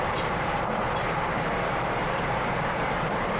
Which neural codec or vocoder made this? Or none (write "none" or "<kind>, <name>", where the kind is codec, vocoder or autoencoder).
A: vocoder, BigVGAN v2